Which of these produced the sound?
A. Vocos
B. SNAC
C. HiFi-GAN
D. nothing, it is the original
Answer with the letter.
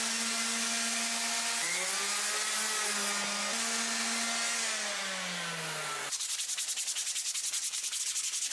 D